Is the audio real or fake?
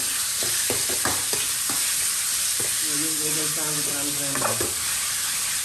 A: real